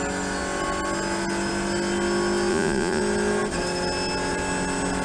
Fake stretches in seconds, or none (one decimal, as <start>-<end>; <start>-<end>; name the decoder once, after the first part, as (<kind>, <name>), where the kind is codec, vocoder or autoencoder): 2.5-3.0 (vocoder, Vocos)